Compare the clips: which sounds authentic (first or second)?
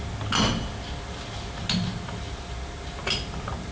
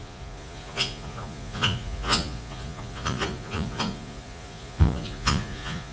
first